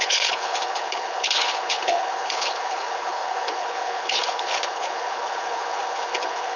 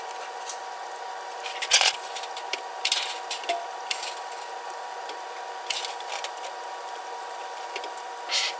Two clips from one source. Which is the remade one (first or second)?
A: first